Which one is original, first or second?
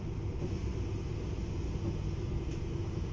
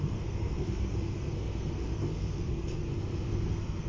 first